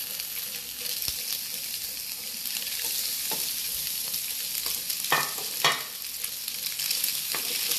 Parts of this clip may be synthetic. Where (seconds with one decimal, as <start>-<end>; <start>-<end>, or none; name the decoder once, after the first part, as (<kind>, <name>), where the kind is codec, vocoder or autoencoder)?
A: none

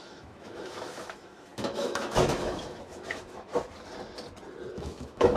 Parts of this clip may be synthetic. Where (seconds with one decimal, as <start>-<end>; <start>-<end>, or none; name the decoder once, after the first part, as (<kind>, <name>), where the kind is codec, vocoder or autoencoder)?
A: 0.0-3.5 (autoencoder, DAC-VAE); 4.7-5.4

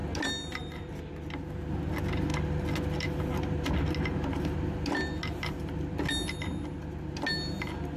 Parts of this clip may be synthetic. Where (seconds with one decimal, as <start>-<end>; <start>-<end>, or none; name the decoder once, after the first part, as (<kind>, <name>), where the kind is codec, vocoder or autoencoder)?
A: none

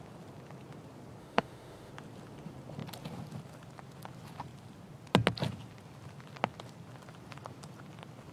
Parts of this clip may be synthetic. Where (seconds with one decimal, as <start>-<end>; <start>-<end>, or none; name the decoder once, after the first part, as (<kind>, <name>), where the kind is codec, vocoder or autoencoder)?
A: 1.2-1.9 (autoencoder, DAC-VAE)

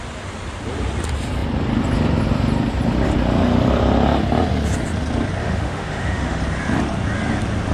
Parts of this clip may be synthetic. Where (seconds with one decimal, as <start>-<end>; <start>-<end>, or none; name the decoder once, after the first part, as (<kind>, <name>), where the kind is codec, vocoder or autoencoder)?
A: 5.4-6.4 (autoencoder, DAC-VAE)

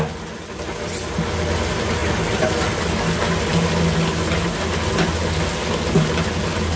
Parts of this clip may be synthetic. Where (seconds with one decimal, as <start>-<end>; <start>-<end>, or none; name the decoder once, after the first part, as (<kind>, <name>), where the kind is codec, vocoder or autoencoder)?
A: none

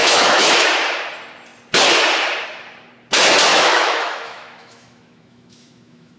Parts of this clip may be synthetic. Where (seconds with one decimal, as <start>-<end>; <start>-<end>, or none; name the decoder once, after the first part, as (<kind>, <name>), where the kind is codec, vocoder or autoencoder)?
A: 0.0-0.5 (autoencoder, DAC-VAE); 3.5-6.2

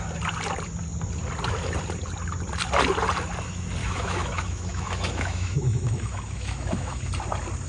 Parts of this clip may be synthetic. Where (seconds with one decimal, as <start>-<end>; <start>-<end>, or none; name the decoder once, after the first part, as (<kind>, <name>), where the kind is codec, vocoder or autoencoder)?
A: 3.8-7.0 (autoencoder, DAC-VAE)